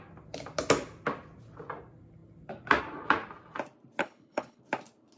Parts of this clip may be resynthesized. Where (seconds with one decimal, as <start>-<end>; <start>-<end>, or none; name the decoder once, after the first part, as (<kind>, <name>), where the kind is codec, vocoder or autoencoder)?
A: 4.0-4.6 (codec, HILCodec)

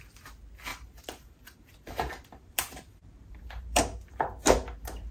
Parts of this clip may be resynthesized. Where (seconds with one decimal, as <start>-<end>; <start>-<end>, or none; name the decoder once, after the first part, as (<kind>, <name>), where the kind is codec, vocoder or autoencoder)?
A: 0.7-3.8 (vocoder, BigVGAN v2)

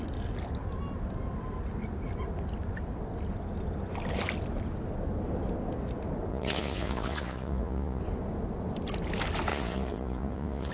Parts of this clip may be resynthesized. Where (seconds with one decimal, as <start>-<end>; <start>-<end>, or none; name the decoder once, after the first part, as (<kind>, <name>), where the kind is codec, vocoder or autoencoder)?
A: 6.3-8.0 (vocoder, Vocos); 9.5-10.7

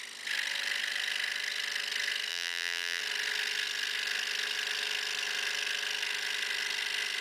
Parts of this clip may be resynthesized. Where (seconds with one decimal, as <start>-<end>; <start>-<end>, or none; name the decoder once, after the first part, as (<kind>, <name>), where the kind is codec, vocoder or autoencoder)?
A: 2.3-3.0 (vocoder, BigVGAN v2)

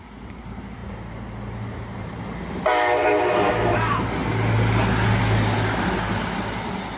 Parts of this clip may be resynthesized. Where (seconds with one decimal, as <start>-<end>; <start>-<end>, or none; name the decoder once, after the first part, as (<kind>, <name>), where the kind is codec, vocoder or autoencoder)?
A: none

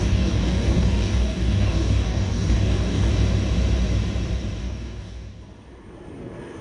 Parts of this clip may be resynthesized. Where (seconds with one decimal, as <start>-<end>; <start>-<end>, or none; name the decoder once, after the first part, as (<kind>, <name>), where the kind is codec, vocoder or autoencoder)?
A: 0.0-3.1 (codec, DAC); 4.6-5.3

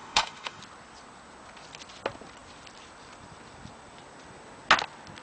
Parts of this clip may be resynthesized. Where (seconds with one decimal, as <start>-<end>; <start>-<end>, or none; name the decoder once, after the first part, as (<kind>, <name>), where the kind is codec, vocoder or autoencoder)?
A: 0.0-0.6 (autoencoder, DAC-VAE)

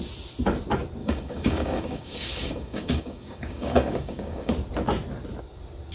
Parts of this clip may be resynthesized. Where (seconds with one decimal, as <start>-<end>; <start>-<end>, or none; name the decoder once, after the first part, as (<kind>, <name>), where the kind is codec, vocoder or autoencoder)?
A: 1.0-4.5 (codec, DAC)